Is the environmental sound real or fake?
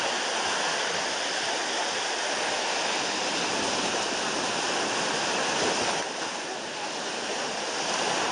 real